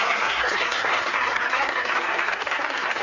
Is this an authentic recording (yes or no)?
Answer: no